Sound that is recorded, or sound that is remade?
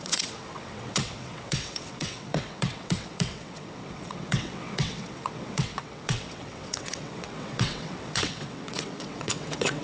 remade